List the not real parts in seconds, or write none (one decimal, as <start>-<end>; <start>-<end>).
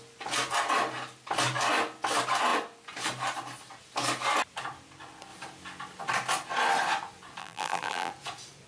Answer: 7.4-8.1